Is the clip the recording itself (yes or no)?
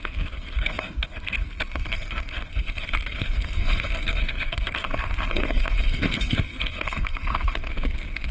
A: no